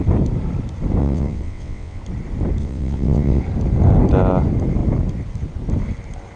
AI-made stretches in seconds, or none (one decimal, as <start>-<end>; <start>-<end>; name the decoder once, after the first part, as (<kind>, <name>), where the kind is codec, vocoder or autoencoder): 1.0-2.0 (vocoder, WaveNeXt); 2.6-3.4